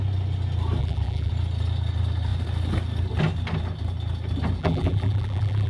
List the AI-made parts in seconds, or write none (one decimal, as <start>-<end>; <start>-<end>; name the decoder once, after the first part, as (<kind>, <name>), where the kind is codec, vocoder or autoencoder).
0.8-1.3 (vocoder, BigVGAN v2); 4.6-5.7

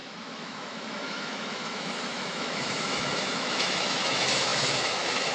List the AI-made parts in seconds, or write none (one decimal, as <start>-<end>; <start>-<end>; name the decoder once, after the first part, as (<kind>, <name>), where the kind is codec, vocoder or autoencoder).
0.0-5.3 (autoencoder, DAC-VAE)

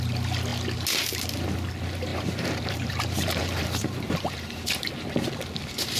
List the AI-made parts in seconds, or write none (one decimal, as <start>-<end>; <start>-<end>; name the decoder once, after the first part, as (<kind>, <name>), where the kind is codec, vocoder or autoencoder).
2.1-4.9 (vocoder, BigVGAN v2)

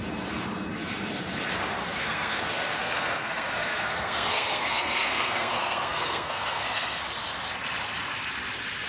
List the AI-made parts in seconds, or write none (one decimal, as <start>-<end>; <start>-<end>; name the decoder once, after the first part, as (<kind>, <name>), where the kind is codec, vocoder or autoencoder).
1.8-2.4 (codec, SNAC); 2.8-7.0

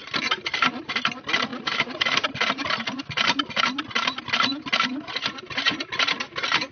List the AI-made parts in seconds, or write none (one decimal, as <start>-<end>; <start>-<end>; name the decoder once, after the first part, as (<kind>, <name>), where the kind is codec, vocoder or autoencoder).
none

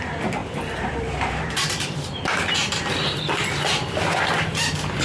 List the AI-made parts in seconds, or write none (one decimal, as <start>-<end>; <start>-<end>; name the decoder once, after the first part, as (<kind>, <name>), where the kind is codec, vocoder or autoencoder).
0.4-3.4 (vocoder, BigVGAN v2)

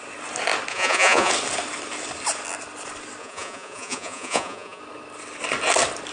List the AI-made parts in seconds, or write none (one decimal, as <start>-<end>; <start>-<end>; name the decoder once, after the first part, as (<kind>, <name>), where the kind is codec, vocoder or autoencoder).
0.7-1.3 (vocoder, Vocos); 3.2-4.8

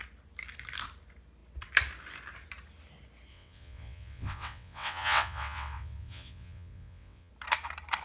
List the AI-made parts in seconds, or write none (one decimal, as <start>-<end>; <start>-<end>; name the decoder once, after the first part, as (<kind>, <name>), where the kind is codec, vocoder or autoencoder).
3.3-7.3 (vocoder, WaveNeXt)